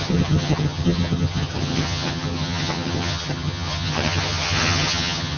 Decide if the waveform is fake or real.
fake